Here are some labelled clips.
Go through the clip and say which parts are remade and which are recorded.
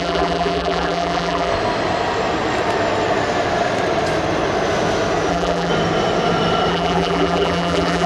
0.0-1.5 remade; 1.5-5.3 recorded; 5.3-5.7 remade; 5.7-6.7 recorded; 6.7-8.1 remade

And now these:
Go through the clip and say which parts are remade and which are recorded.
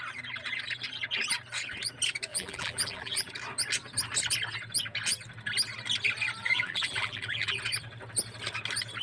0.0-2.3 recorded; 2.3-3.3 remade; 3.3-6.4 recorded; 6.4-7.6 remade; 7.6-9.0 recorded